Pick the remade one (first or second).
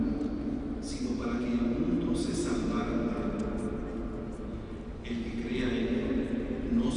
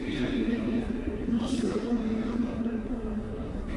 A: second